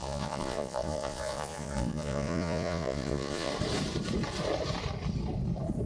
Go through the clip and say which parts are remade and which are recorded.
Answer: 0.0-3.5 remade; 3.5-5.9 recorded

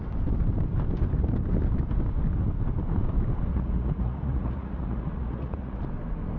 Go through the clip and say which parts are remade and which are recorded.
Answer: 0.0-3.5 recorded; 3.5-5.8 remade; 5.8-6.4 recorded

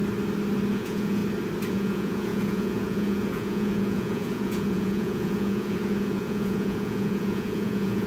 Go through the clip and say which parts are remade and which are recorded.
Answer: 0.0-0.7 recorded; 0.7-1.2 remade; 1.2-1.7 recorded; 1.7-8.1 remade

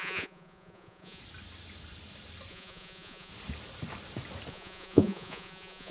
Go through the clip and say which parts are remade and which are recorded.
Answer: 0.0-1.2 remade; 1.2-2.5 recorded; 2.5-3.3 remade; 3.3-4.5 recorded; 4.5-5.9 remade